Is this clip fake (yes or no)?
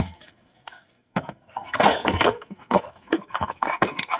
yes